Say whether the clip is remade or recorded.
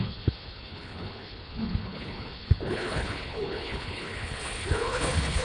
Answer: remade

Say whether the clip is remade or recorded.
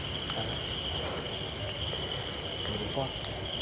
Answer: recorded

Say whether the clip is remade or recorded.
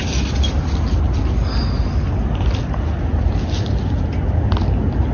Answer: recorded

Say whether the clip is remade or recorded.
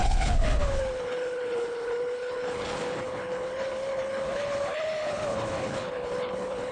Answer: remade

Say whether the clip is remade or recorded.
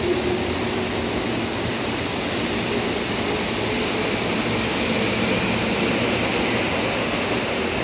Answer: recorded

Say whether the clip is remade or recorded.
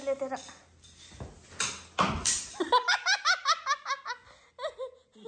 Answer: recorded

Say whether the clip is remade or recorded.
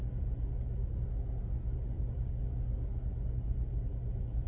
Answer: recorded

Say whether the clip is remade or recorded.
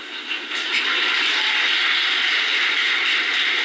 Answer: recorded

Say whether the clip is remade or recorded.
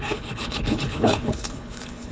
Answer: remade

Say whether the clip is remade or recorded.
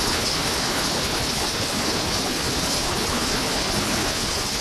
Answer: remade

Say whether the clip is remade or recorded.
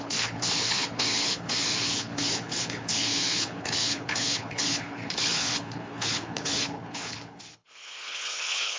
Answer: remade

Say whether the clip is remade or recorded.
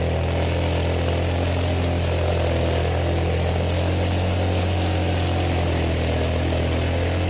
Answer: recorded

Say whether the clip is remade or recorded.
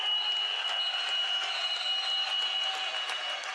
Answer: recorded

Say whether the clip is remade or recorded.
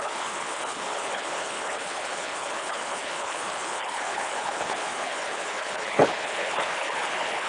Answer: remade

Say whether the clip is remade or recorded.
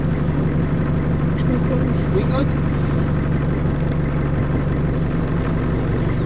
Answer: recorded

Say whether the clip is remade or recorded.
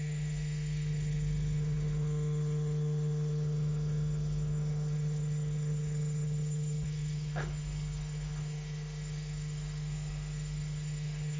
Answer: remade